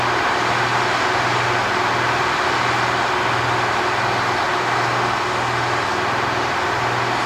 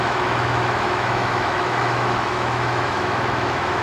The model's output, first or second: second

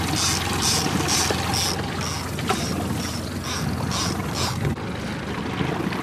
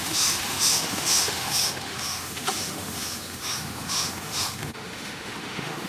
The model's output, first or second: second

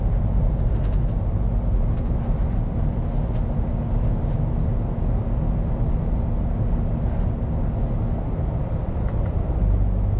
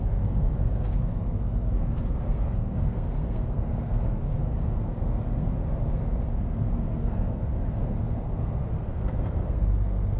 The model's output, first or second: second